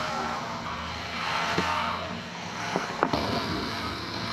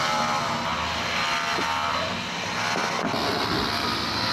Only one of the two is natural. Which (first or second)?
second